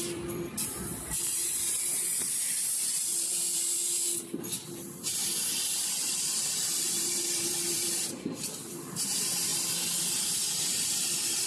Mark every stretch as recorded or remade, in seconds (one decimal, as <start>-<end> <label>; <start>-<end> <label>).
0.0-9.5 remade; 9.5-10.7 recorded; 10.7-11.5 remade